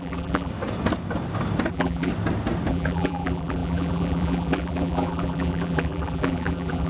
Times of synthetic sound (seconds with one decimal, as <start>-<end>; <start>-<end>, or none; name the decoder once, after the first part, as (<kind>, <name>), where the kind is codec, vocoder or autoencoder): 0.0-0.5 (vocoder, BigVGAN v2); 1.7-2.1; 2.7-6.9